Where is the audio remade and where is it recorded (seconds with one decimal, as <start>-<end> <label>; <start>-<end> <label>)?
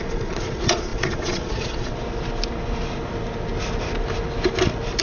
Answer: 0.0-1.9 remade; 1.9-5.0 recorded